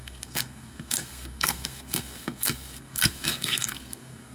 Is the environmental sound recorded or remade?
remade